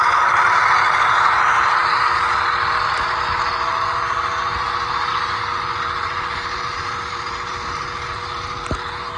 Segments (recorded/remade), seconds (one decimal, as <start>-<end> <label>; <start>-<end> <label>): 0.0-9.2 remade